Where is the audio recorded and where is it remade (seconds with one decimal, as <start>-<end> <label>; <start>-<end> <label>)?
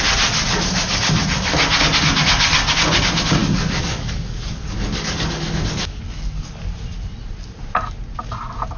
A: 0.0-3.4 recorded; 3.4-6.0 remade; 6.0-8.8 recorded